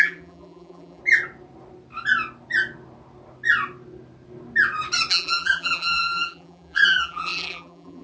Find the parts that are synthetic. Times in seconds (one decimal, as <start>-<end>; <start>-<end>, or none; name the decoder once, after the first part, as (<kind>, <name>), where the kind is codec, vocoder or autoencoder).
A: 0.0-1.0 (vocoder, BigVGAN v2); 5.1-8.0